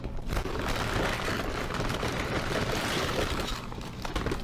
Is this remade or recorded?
recorded